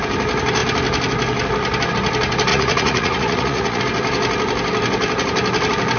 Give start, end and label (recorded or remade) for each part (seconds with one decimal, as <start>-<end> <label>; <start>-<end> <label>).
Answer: 0.0-2.5 recorded; 2.5-3.8 remade; 3.8-6.0 recorded